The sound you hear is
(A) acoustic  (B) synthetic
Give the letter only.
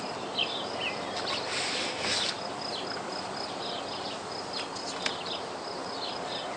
A